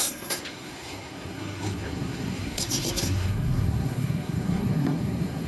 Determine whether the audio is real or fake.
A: fake